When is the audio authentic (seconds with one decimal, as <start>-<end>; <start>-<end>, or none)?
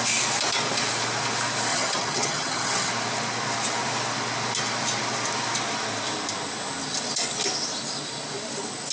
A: 0.0-1.7; 2.9-8.9